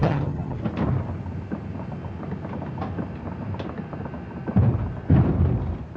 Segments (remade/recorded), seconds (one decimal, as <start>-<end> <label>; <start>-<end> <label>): 0.0-0.6 remade; 0.6-6.0 recorded